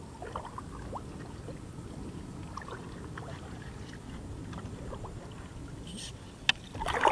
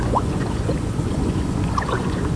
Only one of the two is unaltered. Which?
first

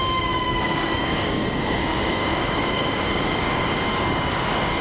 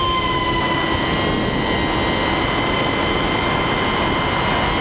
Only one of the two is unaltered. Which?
second